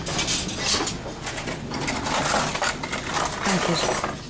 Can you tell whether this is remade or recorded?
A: recorded